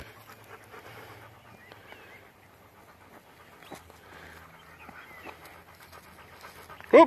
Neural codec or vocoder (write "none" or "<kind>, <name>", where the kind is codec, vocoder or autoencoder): none